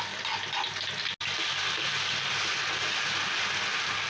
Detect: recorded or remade recorded